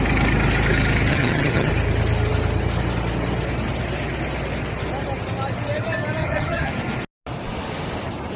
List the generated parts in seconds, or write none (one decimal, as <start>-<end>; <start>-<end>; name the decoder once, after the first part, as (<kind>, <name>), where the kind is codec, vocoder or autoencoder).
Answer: 1.1-1.7 (vocoder, HiFi-GAN); 6.2-6.7